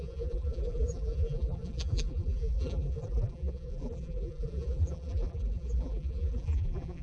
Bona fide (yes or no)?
no